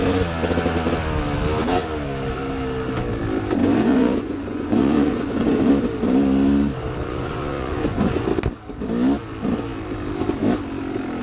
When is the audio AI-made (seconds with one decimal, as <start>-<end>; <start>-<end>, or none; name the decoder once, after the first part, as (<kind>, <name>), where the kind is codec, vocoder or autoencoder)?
3.6-5.7 (vocoder, Vocos); 7.0-8.2